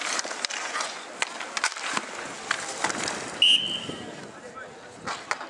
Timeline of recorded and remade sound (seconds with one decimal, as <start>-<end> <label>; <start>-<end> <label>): 0.0-0.6 recorded; 0.6-1.1 remade; 1.1-5.5 recorded